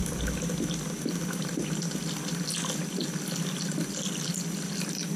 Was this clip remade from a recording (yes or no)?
no